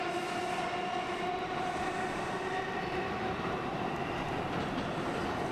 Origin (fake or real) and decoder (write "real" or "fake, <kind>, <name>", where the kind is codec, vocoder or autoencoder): real